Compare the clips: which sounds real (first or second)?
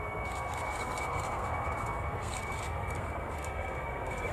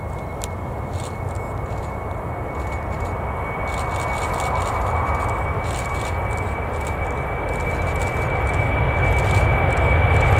second